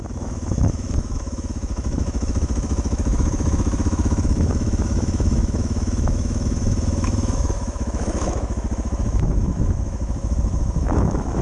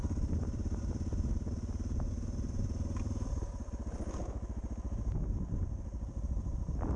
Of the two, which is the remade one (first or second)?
first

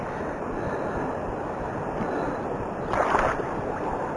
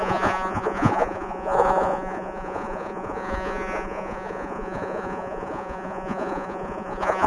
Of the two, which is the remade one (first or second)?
second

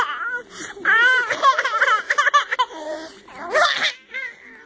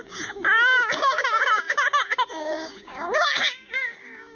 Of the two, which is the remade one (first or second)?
second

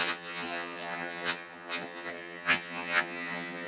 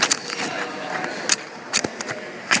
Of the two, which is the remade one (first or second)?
first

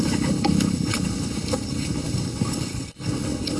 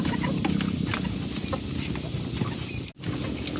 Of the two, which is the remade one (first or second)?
first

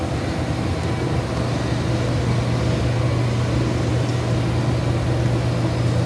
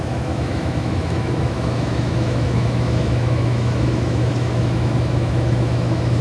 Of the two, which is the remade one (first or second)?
second